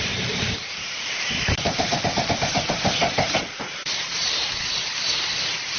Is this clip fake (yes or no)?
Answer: yes